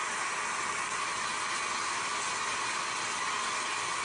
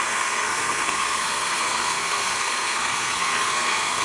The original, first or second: first